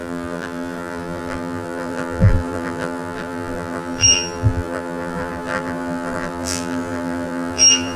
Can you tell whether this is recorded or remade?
remade